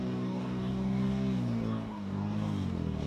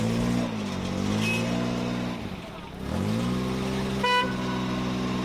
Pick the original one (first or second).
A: second